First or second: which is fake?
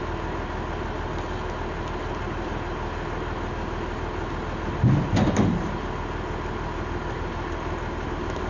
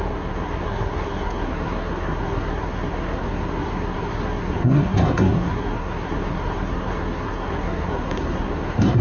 second